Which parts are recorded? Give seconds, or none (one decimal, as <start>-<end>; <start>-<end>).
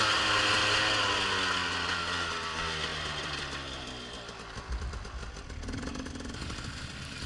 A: 0.0-2.9; 6.6-7.3